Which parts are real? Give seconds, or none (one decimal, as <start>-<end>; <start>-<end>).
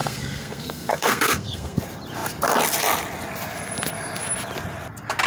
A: 1.8-5.3